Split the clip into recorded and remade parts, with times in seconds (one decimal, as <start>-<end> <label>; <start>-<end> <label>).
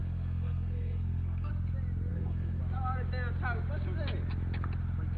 0.0-1.5 remade; 1.5-2.1 recorded; 2.1-2.6 remade; 2.6-5.2 recorded